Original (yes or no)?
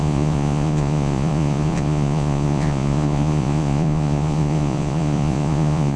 no